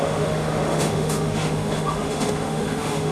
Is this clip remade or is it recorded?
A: remade